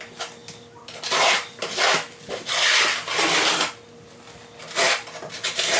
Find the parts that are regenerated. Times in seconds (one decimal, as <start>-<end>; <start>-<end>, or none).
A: none